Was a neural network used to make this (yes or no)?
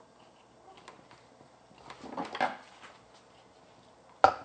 no